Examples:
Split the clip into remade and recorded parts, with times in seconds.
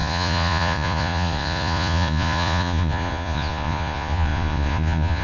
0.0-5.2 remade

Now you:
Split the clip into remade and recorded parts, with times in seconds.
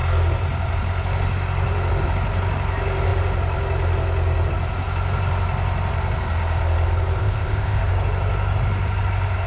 0.0-7.2 recorded; 7.2-7.8 remade; 7.8-9.5 recorded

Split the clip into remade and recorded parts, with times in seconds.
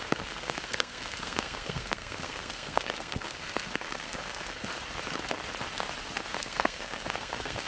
0.0-4.7 remade; 4.7-6.4 recorded; 6.4-7.7 remade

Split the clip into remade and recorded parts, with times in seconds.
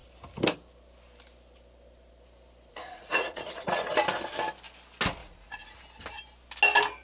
0.0-2.7 recorded; 2.7-3.9 remade; 3.9-5.2 recorded; 5.2-5.8 remade; 5.8-7.0 recorded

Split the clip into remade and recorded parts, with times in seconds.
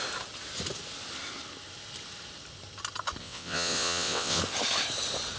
0.0-3.2 recorded; 3.2-4.4 remade; 4.4-5.4 recorded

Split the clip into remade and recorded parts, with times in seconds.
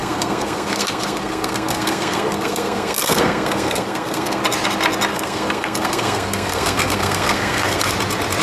0.0-4.4 remade; 4.4-5.1 recorded; 5.1-7.9 remade; 7.9-8.4 recorded